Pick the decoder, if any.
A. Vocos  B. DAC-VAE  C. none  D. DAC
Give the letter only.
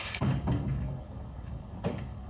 D